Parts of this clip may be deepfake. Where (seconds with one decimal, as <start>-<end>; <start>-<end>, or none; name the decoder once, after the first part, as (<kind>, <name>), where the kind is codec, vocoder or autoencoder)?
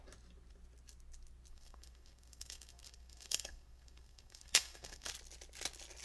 1.5-5.1 (codec, SNAC)